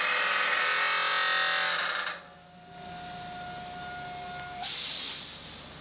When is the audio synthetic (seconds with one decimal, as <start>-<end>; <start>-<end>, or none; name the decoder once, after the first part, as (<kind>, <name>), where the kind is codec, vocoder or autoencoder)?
none

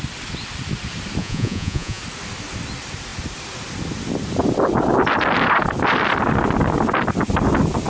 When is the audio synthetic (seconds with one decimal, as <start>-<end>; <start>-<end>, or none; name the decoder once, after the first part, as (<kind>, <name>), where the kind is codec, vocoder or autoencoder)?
1.2-2.0 (vocoder, Vocos)

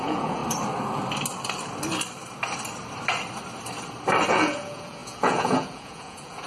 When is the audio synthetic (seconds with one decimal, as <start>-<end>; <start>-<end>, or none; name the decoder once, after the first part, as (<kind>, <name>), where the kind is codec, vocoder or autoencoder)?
0.0-0.4 (vocoder, Vocos); 4.3-6.5

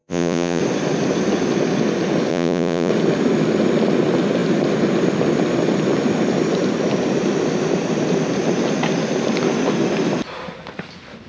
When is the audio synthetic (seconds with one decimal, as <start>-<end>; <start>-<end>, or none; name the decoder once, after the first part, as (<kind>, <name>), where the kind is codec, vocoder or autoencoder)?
0.0-0.6 (vocoder, Vocos); 2.3-2.9

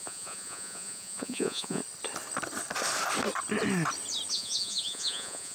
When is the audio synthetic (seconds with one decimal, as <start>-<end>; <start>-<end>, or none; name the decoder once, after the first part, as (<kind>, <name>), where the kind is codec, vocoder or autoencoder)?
0.0-1.8 (vocoder, Vocos); 4.3-5.5

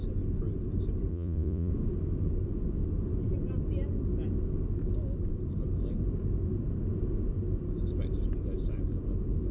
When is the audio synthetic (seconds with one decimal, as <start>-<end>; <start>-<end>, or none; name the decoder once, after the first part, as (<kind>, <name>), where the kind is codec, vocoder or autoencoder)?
1.1-1.7 (vocoder, Vocos)